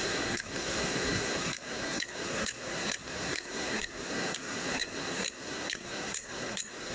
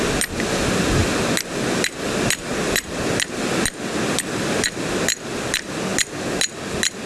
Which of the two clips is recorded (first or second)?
second